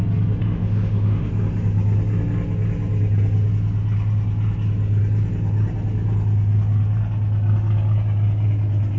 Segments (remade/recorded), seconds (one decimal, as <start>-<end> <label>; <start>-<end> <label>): 0.0-0.4 recorded; 0.4-1.3 remade; 1.3-9.0 recorded